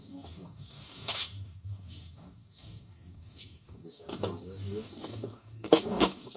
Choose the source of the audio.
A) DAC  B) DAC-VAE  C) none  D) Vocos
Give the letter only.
A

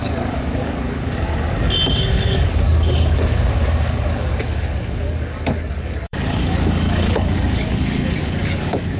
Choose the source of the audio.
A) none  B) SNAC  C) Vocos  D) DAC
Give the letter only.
D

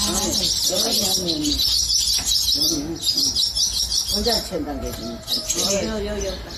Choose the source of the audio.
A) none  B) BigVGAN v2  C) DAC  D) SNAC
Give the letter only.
A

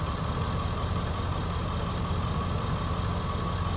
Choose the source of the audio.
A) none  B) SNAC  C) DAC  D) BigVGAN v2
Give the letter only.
A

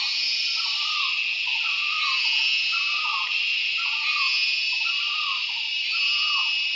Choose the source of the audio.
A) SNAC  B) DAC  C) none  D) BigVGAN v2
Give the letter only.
C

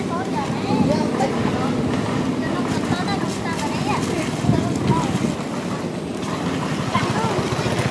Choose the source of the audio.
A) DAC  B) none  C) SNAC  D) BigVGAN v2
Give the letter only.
B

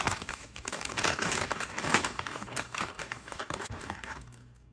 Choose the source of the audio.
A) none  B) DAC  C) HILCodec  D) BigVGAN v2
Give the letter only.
B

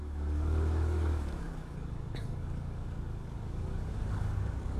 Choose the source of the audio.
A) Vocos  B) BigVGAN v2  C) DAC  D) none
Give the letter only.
C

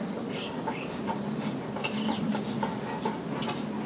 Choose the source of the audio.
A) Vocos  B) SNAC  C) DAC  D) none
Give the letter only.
D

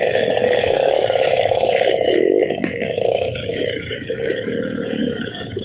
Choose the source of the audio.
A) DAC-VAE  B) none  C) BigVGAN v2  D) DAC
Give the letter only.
D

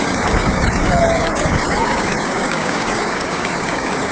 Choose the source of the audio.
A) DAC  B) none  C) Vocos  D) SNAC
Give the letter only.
A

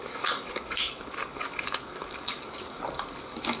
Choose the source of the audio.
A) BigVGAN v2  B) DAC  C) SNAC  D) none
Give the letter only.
B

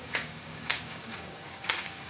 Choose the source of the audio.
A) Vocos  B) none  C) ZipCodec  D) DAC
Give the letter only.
D